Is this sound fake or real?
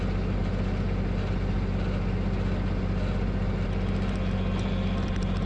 real